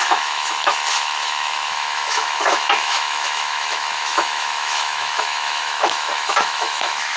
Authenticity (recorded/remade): remade